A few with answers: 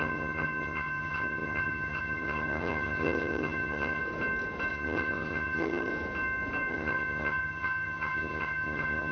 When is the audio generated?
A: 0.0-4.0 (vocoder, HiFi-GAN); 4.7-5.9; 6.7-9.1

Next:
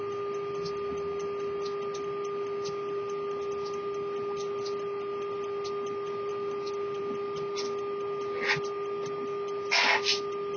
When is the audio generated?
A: none

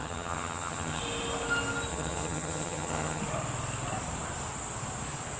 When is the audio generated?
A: 0.0-1.0 (vocoder, HiFi-GAN); 1.9-3.2

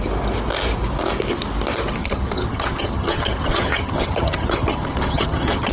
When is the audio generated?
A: 2.0-5.7 (vocoder, HiFi-GAN)

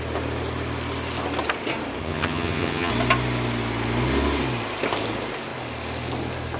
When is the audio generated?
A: 2.0-2.9 (vocoder, HiFi-GAN)

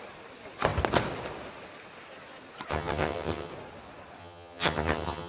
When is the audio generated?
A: 2.7-3.5 (vocoder, HiFi-GAN); 4.2-5.3

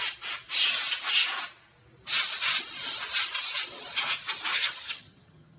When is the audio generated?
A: 4.5-5.6 (vocoder, HiFi-GAN)